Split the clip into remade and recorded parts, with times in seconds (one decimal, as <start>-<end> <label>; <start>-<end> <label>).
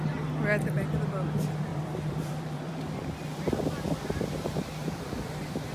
0.0-1.7 recorded; 1.7-5.1 remade; 5.1-5.7 recorded